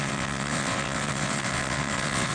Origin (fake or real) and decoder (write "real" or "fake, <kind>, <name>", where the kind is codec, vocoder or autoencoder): fake, vocoder, WaveNeXt